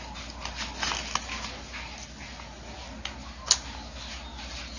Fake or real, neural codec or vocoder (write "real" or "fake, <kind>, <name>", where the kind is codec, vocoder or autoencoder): real